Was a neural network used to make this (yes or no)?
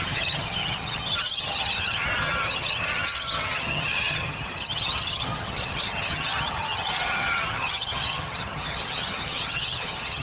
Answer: yes